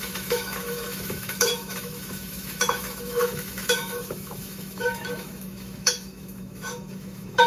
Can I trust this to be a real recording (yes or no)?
no